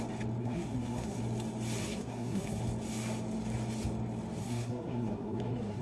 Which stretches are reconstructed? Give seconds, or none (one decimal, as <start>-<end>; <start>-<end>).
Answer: 0.4-1.2; 1.8-2.6; 4.4-5.8